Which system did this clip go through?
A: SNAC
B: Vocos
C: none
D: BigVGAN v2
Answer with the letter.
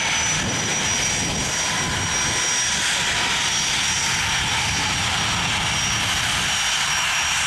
C